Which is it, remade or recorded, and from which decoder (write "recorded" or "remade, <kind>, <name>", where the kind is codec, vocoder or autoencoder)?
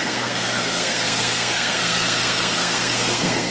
remade, codec, SNAC